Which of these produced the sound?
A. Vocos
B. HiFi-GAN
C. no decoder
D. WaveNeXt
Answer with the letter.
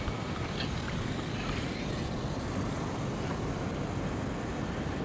C